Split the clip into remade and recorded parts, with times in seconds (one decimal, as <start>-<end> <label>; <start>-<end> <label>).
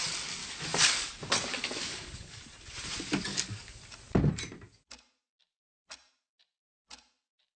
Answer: 0.0-0.4 recorded; 0.4-1.1 remade; 1.1-1.5 recorded; 1.5-2.4 remade; 2.4-3.3 recorded; 3.3-3.8 remade; 3.8-7.6 recorded